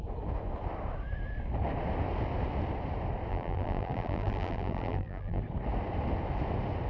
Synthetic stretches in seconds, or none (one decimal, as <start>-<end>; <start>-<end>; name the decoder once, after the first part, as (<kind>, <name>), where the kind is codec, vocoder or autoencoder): 3.3-5.4 (vocoder, BigVGAN v2)

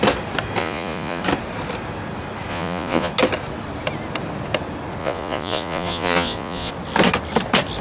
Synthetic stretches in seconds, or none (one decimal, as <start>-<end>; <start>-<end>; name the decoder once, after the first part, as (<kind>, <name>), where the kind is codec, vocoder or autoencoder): 0.6-1.2 (vocoder, Vocos); 2.5-3.1; 5.0-6.7

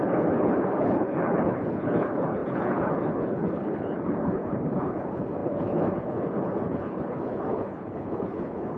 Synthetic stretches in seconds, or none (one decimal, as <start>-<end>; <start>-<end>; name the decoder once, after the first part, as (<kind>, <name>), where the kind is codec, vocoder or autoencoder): 0.0-8.8 (codec, HILCodec)

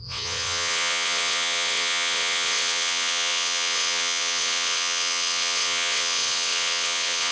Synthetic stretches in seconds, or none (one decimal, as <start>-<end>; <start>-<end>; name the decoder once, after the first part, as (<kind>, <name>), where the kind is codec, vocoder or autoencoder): 0.0-7.3 (vocoder, WaveNeXt)

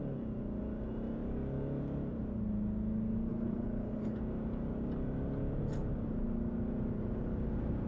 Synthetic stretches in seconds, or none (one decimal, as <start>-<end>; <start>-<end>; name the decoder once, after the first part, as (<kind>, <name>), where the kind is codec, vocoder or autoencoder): 3.3-4.2 (codec, HILCodec)

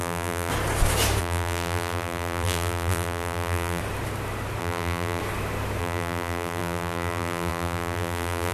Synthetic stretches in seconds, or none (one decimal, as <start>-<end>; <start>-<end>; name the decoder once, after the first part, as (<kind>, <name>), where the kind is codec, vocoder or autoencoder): 0.0-0.5 (vocoder, BigVGAN v2); 1.2-3.8; 4.6-5.2; 5.8-8.5

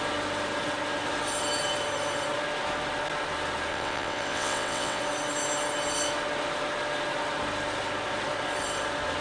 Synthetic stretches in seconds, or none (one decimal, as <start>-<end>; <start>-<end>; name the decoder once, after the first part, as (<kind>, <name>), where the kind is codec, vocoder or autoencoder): 3.7-5.0 (vocoder, WaveNeXt)